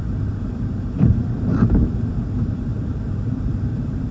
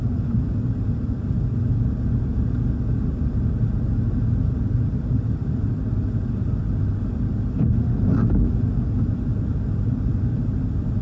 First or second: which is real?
second